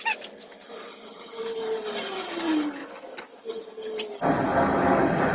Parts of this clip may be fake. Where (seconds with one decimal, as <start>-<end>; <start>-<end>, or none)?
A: none